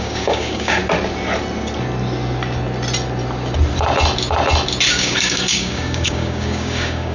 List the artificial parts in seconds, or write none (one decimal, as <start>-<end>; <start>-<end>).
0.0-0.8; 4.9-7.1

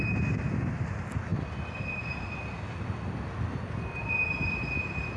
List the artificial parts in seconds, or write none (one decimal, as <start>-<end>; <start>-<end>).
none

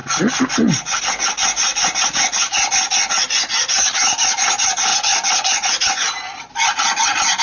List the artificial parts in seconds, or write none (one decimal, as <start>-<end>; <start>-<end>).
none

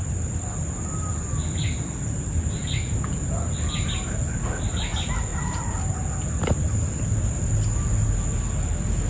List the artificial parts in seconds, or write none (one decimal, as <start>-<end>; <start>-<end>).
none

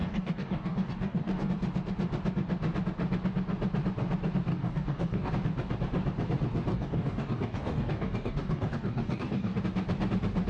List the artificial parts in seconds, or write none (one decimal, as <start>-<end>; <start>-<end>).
0.0-1.5; 4.5-5.3; 6.7-9.6

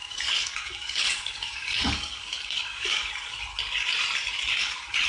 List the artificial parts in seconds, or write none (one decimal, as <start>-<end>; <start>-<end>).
0.0-3.1

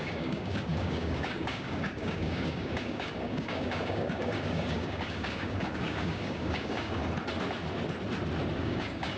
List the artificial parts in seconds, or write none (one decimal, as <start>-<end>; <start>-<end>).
0.0-7.0; 8.6-9.2